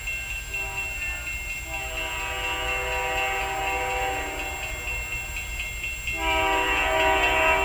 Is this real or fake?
real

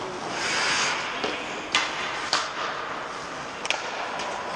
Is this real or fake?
real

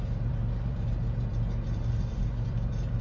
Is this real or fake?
fake